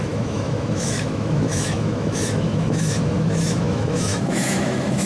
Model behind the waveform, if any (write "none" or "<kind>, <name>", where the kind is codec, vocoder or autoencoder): autoencoder, DAC-VAE